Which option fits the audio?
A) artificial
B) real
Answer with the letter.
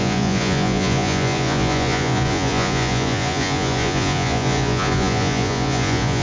A